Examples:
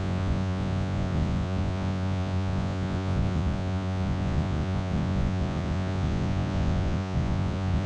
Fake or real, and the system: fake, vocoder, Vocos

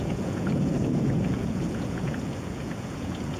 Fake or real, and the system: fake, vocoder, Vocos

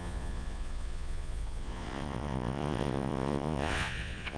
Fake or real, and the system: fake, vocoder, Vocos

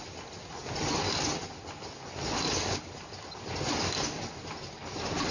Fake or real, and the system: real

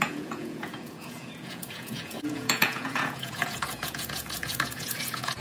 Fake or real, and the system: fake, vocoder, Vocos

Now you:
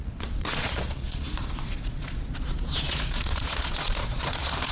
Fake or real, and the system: fake, vocoder, Vocos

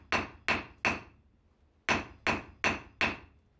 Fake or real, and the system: real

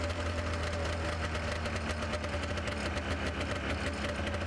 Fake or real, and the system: real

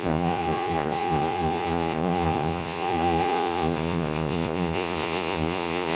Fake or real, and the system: fake, vocoder, Vocos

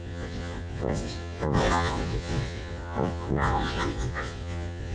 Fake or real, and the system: fake, vocoder, Vocos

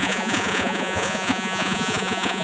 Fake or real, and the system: fake, vocoder, Vocos